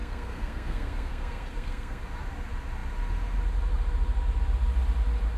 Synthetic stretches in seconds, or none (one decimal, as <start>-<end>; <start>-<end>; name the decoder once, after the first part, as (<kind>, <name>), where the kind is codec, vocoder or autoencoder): 0.0-2.0 (codec, SNAC)